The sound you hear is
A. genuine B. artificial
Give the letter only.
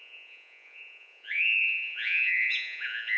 B